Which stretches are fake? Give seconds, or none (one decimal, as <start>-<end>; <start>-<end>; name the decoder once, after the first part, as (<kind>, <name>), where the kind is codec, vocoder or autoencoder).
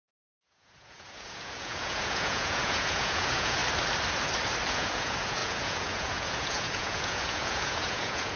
0.0-3.6 (vocoder, Vocos); 4.7-8.4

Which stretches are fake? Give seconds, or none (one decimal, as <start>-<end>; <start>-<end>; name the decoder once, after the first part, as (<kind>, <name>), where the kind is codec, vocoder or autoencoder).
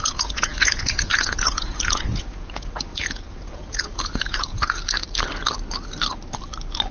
0.0-4.8 (vocoder, Vocos)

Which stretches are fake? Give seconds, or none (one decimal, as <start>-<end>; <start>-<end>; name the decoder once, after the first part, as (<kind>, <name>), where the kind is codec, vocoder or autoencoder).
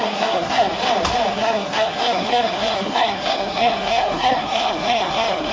0.0-0.7 (codec, SNAC); 1.3-5.5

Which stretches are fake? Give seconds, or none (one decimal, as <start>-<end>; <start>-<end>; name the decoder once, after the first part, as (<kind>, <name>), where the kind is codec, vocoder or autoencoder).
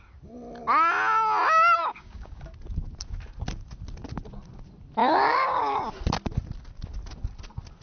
1.8-2.4 (codec, DAC); 5.0-5.8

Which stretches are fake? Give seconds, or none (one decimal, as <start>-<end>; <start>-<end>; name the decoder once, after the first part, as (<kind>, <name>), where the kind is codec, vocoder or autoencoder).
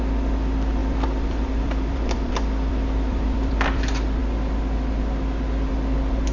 0.8-3.8 (vocoder, BigVGAN v2)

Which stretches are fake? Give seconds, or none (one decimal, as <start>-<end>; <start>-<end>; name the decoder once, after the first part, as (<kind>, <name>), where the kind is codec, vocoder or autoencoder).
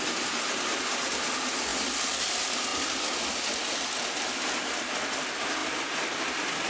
2.7-3.4 (vocoder, BigVGAN v2)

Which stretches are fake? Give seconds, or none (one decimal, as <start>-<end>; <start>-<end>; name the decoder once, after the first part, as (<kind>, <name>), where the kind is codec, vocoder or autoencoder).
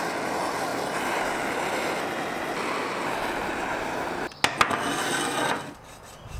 0.7-1.2 (vocoder, BigVGAN v2); 3.4-4.4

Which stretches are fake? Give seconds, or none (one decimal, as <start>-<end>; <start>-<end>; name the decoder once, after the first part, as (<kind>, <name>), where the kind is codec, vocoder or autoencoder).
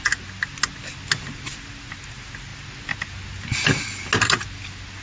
none